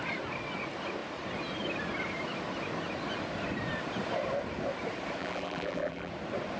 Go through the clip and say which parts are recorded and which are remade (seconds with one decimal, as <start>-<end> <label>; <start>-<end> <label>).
0.0-5.2 recorded; 5.2-6.1 remade; 6.1-6.6 recorded